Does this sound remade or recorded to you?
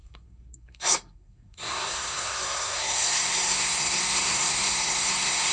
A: remade